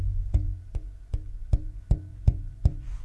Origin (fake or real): fake